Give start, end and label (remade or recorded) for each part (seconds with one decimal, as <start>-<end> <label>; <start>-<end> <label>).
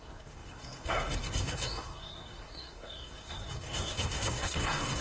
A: 0.0-5.0 remade